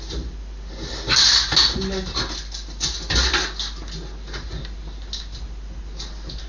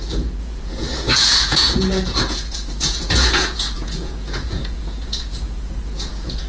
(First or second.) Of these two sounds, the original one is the first